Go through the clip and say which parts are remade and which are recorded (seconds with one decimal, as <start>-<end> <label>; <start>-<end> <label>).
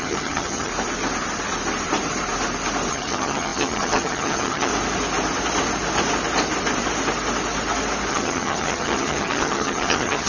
0.0-0.7 remade; 0.7-2.9 recorded; 2.9-4.7 remade; 4.7-8.1 recorded; 8.1-10.3 remade